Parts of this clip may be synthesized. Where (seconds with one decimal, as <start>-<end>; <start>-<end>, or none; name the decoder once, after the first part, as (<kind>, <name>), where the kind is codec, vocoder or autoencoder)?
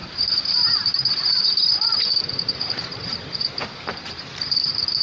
0.0-5.0 (vocoder, BigVGAN v2)